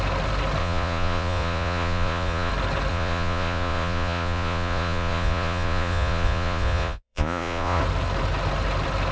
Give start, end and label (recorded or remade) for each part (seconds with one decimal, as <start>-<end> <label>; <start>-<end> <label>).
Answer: 0.0-0.6 recorded; 0.6-2.5 remade; 2.5-2.9 recorded; 2.9-7.8 remade; 7.8-9.1 recorded